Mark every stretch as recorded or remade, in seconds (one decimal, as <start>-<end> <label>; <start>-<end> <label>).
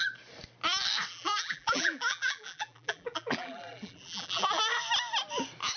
0.0-1.1 recorded; 1.1-4.6 remade; 4.6-5.8 recorded